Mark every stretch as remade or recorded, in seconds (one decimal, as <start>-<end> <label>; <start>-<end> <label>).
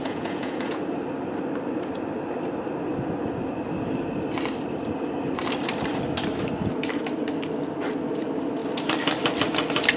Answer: 0.0-0.8 remade; 0.8-10.0 recorded